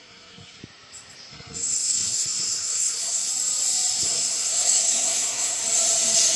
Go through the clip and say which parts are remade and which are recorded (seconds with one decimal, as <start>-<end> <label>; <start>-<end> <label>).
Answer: 0.0-0.6 remade; 0.6-1.3 recorded; 1.3-3.3 remade; 3.3-4.0 recorded; 4.0-5.6 remade; 5.6-6.4 recorded